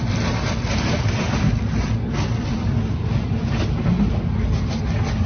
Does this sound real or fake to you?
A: real